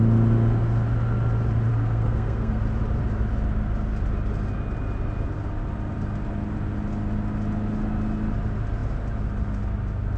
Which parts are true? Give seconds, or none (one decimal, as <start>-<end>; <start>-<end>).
0.0-1.7; 2.6-10.2